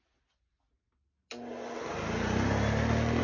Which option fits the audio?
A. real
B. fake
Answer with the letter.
A